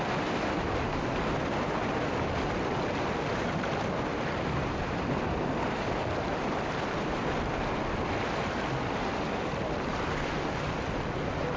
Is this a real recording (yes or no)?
yes